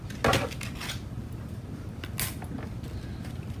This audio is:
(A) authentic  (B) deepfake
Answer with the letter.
A